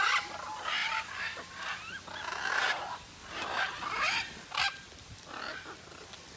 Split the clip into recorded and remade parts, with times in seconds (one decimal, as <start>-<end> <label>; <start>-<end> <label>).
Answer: 0.0-6.4 recorded